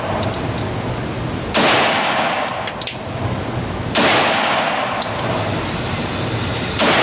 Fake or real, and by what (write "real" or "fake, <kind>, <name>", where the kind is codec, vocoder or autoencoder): real